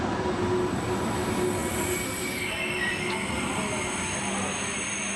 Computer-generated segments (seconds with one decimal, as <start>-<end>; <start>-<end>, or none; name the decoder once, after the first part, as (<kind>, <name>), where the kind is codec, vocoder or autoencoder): none